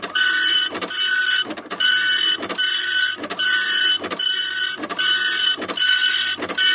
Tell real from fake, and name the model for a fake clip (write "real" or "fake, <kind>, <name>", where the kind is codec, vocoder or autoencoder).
fake, vocoder, BigVGAN v2